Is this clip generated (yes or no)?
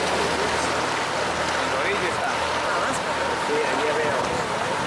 no